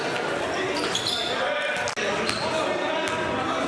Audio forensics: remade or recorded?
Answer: recorded